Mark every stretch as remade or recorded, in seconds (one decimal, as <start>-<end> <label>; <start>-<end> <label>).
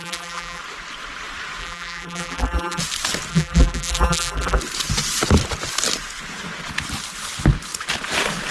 0.0-0.6 remade; 0.6-1.6 recorded; 1.6-2.8 remade; 2.8-3.3 recorded; 3.3-4.6 remade; 4.6-8.5 recorded